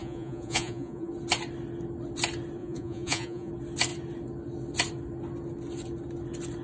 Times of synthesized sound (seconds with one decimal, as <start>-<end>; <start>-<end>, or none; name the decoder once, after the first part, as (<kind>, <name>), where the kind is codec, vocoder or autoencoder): 0.0-1.1 (vocoder, Vocos); 2.6-3.5

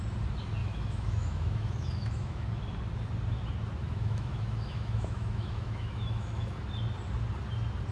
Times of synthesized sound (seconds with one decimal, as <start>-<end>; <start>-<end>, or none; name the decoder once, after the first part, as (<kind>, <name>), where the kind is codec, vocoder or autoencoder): 0.6-2.6 (autoencoder, DAC-VAE); 3.8-6.5